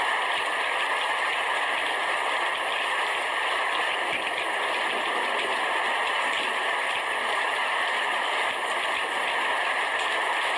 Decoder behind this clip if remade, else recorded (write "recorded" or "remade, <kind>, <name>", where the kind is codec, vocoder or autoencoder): recorded